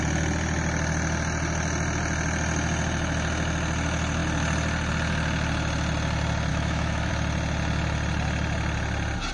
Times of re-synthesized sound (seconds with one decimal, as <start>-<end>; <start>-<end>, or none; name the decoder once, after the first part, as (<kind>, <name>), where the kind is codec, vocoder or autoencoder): 6.5-7.1 (autoencoder, DAC-VAE)